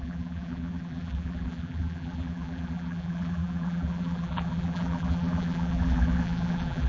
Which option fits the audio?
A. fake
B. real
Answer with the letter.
A